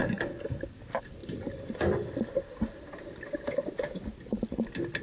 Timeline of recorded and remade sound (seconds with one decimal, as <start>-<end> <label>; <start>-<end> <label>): 0.0-0.6 remade; 0.6-5.0 recorded